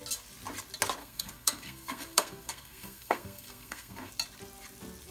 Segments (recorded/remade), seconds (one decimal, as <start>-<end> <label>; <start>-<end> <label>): 0.0-1.0 recorded; 1.0-4.1 remade; 4.1-5.1 recorded